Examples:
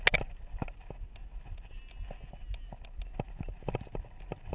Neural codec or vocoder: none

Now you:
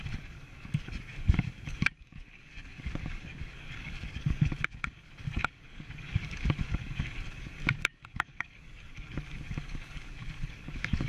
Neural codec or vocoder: codec, DAC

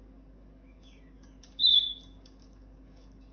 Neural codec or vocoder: codec, DAC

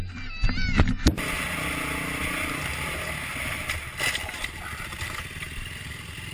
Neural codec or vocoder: none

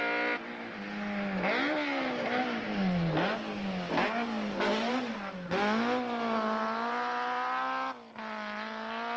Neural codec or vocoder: none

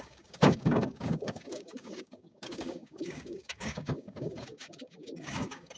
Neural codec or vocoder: codec, DAC